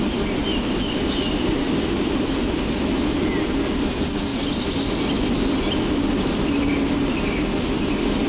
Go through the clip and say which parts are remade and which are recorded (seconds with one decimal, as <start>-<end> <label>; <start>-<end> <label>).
0.0-8.3 recorded